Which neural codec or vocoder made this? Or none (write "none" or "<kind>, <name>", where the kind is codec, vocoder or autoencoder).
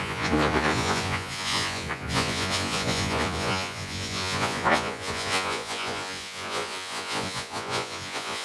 vocoder, Vocos